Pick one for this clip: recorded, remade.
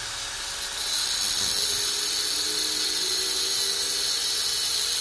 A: recorded